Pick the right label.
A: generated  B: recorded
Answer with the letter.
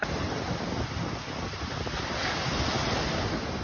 B